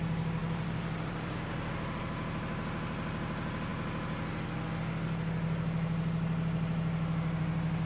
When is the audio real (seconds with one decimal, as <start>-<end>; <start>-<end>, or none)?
0.0-0.4; 2.0-7.9